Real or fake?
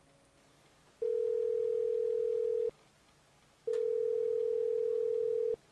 real